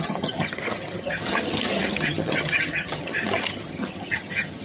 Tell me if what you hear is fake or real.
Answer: fake